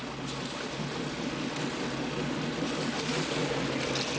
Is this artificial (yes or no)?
no